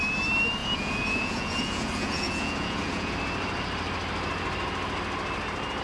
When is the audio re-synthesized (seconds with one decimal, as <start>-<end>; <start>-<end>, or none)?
0.6-3.1